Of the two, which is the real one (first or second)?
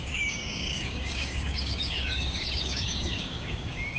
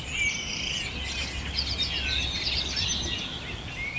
second